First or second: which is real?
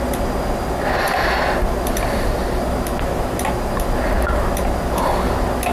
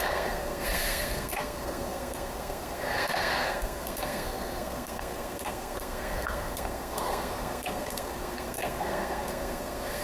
first